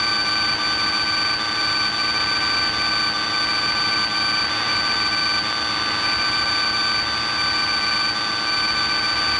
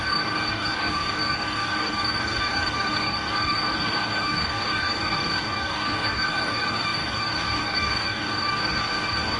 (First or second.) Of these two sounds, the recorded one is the first